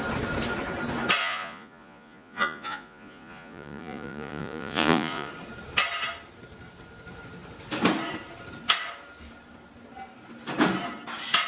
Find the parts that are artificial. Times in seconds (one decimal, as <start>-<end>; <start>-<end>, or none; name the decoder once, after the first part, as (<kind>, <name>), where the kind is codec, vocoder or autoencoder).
1.2-5.3 (vocoder, Vocos)